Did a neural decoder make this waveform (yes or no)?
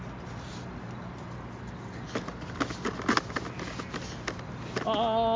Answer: no